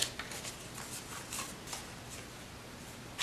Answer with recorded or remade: recorded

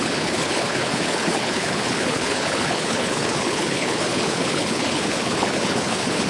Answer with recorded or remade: remade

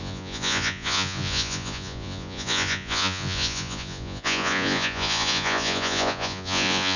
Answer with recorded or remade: remade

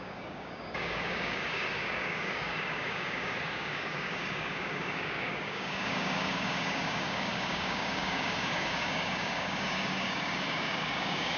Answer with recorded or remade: remade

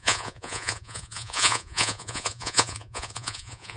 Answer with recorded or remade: remade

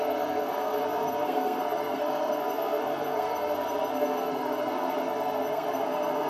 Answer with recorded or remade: remade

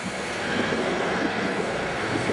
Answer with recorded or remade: remade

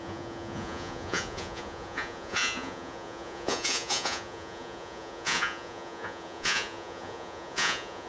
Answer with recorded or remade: remade